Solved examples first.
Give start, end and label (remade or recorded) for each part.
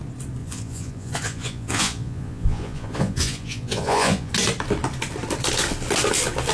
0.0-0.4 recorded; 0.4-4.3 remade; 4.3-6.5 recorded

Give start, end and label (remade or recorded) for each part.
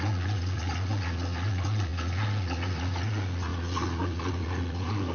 0.0-5.1 remade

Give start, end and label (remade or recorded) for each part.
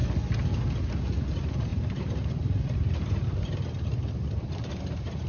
0.0-1.2 recorded; 1.2-5.3 remade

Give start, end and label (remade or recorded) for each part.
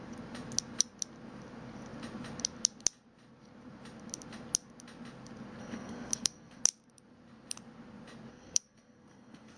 0.0-5.6 recorded; 5.6-6.6 remade; 6.6-8.3 recorded; 8.3-9.6 remade